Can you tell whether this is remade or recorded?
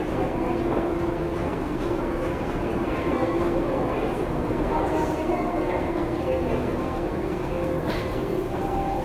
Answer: remade